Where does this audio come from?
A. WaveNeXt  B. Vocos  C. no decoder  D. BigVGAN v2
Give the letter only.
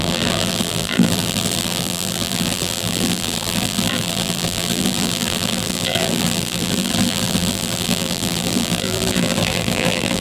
D